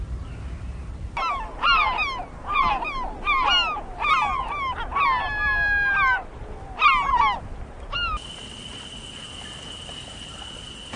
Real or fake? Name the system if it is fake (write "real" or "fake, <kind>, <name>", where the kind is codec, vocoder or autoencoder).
real